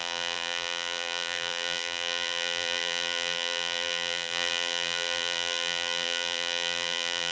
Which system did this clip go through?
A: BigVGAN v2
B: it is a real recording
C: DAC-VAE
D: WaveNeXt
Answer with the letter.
A